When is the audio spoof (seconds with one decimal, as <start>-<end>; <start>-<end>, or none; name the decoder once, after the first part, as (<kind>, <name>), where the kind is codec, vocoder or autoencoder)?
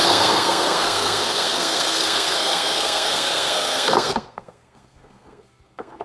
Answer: 0.0-6.0 (codec, SNAC)